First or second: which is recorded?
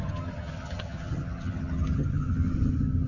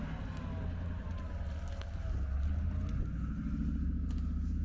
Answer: second